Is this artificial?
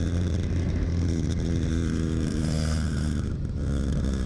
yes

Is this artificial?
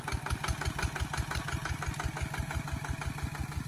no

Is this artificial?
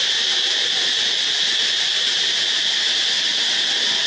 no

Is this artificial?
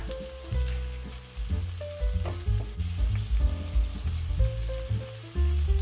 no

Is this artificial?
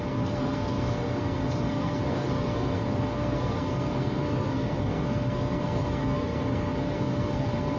yes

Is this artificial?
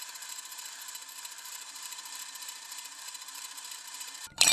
yes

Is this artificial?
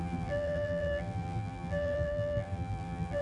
yes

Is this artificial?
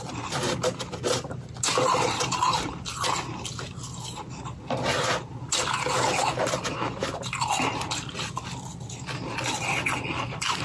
no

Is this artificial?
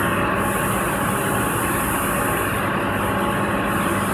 no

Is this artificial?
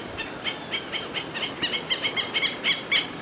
no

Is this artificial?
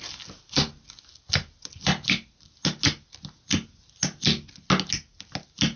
no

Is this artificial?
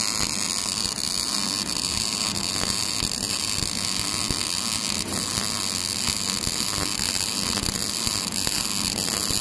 no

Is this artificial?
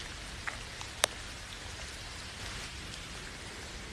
no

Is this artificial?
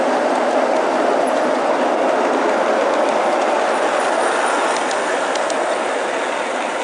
no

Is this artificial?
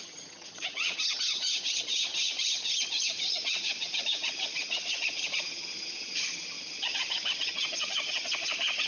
yes